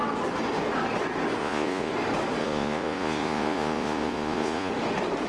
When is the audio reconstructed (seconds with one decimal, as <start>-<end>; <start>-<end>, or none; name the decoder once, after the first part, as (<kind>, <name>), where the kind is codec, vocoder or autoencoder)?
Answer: 1.4-1.9 (vocoder, Vocos); 2.4-4.7

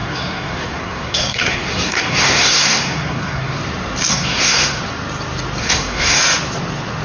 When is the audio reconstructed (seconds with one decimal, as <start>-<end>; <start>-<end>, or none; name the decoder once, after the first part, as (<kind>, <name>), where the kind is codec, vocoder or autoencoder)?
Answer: 0.0-3.6 (codec, SNAC); 4.1-4.8; 5.6-6.2

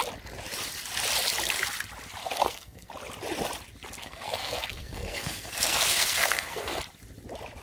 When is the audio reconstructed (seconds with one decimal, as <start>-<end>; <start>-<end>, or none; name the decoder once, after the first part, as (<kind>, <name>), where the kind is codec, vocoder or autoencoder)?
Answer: 2.2-2.9 (codec, SNAC); 4.0-6.8

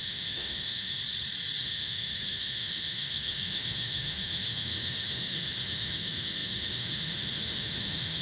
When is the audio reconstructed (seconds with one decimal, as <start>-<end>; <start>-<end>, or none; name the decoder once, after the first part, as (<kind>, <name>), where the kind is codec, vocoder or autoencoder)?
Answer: 0.0-1.0 (autoencoder, DAC-VAE); 1.6-8.2

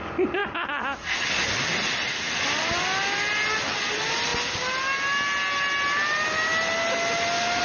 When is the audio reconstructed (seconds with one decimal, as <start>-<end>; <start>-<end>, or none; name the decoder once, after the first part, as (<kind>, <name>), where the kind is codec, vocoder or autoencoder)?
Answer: none

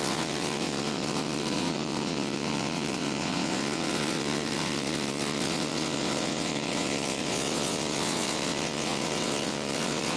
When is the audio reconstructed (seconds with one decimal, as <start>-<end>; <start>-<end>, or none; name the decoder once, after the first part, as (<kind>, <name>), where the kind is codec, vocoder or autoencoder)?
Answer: 0.0-10.2 (vocoder, WaveNeXt)

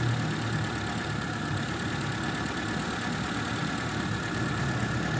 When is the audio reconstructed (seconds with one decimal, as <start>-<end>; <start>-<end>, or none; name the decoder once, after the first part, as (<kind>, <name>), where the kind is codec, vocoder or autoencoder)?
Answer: 1.0-1.9 (vocoder, BigVGAN v2); 3.6-5.2

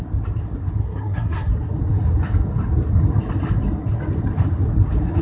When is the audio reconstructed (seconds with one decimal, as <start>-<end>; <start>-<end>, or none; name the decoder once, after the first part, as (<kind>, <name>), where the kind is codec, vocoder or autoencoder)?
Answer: 0.8-1.5 (codec, SNAC)